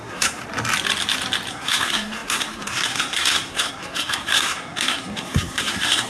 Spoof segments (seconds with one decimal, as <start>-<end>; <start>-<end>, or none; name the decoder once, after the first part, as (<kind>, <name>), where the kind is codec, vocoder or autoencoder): 0.0-0.4 (codec, SNAC); 1.5-6.1